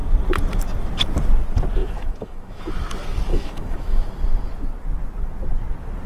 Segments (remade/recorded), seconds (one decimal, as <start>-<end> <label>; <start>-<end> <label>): 0.0-1.8 recorded; 1.8-2.7 remade; 2.7-3.3 recorded; 3.3-4.1 remade; 4.1-6.1 recorded